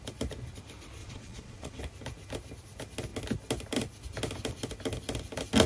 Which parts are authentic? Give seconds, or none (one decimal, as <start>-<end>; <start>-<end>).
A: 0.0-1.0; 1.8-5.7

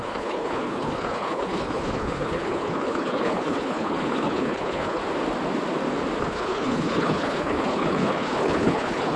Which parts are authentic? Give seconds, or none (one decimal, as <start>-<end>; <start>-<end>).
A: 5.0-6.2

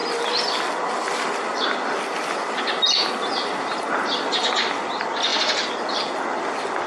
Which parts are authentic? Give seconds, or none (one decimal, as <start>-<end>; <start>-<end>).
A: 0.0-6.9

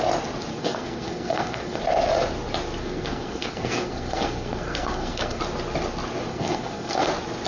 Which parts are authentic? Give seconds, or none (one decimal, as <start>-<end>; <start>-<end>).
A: 0.0-0.5; 1.8-2.8; 5.4-6.3; 7.1-7.5